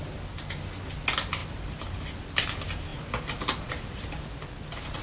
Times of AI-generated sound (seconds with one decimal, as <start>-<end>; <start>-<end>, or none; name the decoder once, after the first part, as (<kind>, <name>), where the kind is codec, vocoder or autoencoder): none